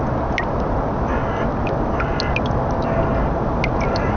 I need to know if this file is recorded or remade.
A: recorded